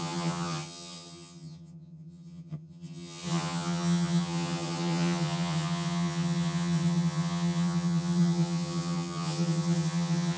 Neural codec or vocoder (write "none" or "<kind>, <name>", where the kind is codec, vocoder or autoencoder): vocoder, HiFi-GAN